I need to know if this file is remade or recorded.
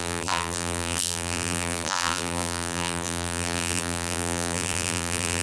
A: remade